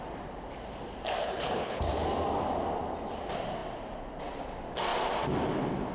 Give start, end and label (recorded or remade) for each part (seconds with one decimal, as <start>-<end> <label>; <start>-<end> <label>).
0.0-1.2 recorded; 1.2-1.9 remade; 1.9-5.9 recorded